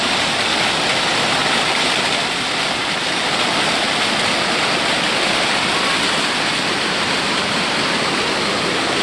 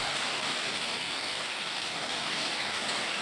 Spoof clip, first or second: second